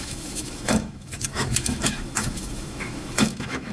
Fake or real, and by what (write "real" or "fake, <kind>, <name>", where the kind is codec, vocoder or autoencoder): fake, autoencoder, DAC-VAE